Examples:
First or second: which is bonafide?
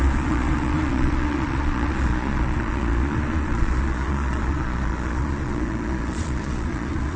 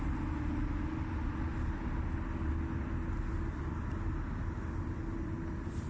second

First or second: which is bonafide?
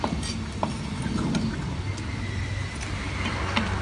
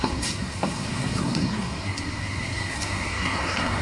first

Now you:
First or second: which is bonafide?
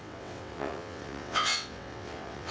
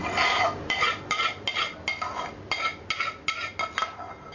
second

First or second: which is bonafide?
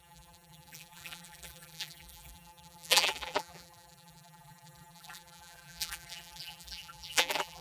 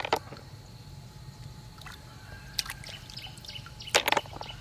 second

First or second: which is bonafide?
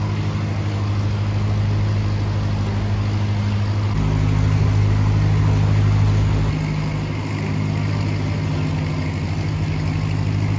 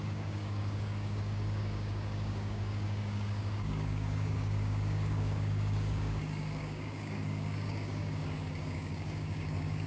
first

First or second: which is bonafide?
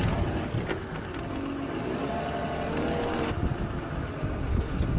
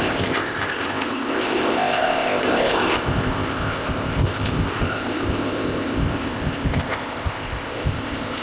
first